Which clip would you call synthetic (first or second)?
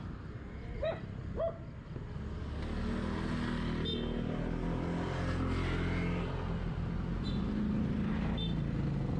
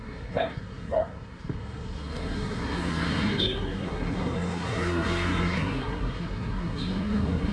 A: second